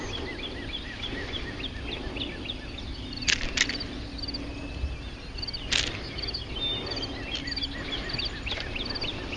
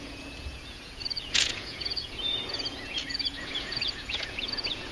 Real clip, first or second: first